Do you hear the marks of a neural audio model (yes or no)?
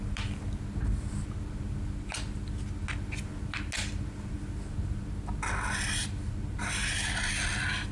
no